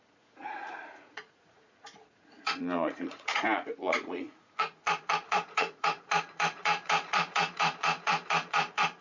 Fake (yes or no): yes